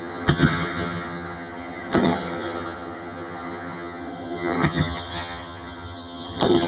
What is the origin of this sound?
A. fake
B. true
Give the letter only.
A